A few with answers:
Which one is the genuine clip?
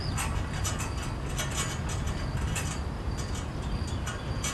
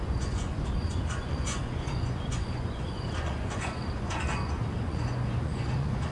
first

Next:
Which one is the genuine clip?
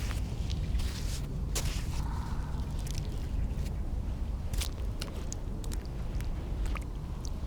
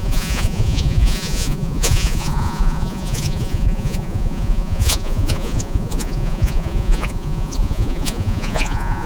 first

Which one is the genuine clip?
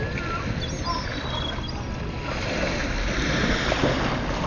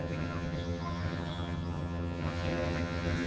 first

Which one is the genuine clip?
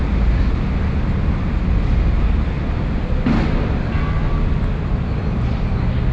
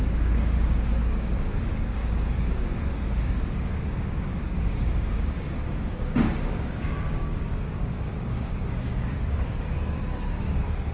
first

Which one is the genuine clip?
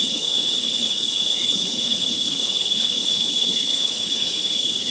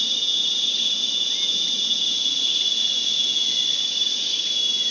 second